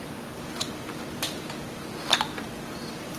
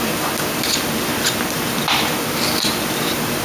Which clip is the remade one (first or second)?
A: first